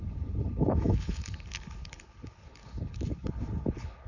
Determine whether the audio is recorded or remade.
remade